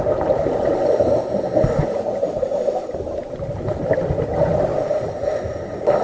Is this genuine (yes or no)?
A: yes